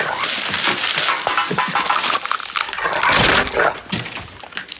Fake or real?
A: real